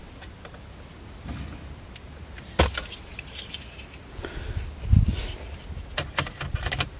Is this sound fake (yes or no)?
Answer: no